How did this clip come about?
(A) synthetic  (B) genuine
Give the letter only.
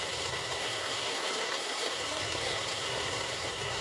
A